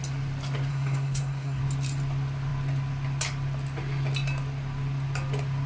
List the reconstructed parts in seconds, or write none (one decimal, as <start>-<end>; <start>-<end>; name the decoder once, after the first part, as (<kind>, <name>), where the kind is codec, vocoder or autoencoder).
0.7-1.6 (codec, SNAC)